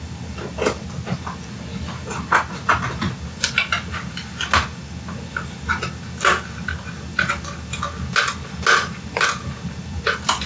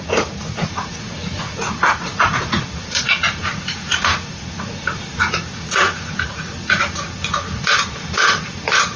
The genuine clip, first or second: first